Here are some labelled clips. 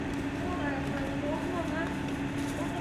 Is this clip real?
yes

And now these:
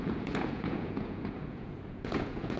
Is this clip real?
no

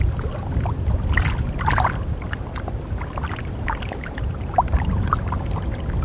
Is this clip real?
yes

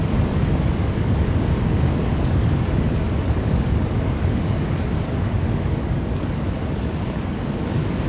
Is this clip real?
no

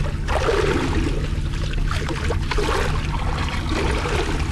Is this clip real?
yes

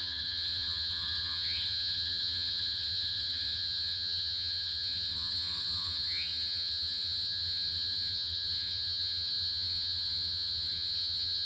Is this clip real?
no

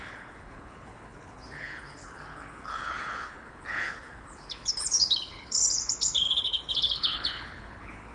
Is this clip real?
no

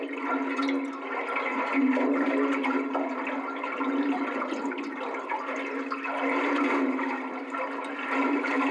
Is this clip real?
yes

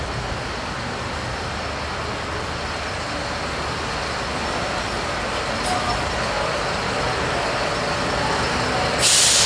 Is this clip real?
yes